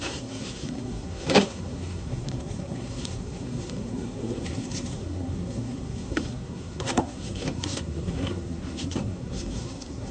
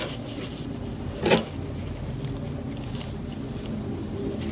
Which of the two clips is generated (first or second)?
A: first